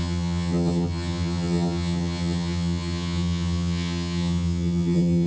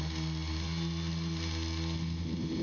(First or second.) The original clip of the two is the second